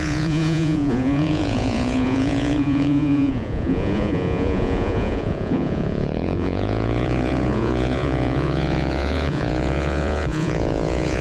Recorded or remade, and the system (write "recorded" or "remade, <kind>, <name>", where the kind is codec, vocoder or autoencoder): remade, vocoder, Vocos